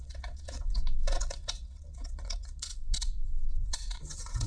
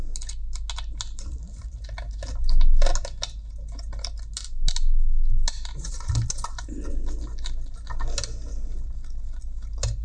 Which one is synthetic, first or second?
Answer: first